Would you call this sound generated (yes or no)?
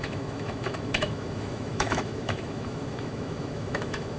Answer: yes